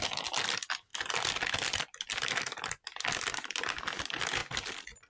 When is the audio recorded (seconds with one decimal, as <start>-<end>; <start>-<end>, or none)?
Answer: 0.0-5.1